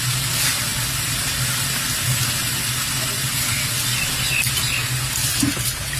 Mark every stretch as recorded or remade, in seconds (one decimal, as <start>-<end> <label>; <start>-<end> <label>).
0.0-6.0 recorded